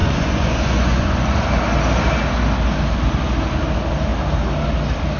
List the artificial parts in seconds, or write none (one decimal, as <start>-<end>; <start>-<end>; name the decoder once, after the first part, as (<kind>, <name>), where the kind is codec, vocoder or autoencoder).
0.0-1.5 (vocoder, Vocos)